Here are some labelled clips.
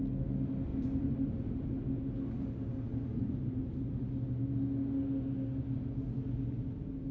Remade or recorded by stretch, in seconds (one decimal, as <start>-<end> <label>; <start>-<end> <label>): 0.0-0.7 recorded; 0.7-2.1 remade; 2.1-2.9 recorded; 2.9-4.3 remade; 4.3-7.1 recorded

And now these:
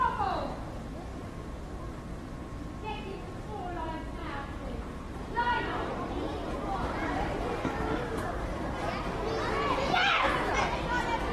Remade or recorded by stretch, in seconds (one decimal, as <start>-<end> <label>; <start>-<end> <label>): 0.0-4.2 recorded; 4.2-7.4 remade; 7.4-11.3 recorded

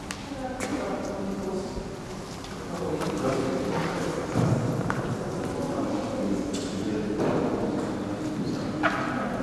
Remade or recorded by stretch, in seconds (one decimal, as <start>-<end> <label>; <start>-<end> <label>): 0.0-0.7 recorded; 0.7-1.7 remade; 1.7-3.8 recorded; 3.8-5.5 remade; 5.5-9.4 recorded

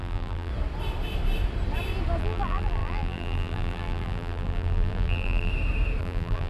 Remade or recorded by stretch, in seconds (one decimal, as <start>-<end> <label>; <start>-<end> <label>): 0.0-0.5 remade; 0.5-2.2 recorded; 2.2-5.5 remade; 5.5-6.0 recorded; 6.0-6.5 remade

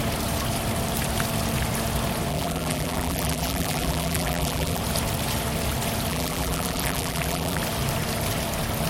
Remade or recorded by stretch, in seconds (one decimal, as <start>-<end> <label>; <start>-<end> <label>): 0.0-2.3 recorded; 2.3-4.8 remade; 4.8-6.1 recorded; 6.1-7.6 remade; 7.6-8.9 recorded